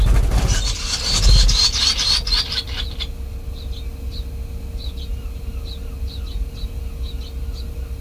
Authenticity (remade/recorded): recorded